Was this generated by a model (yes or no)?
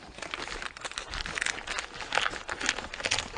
no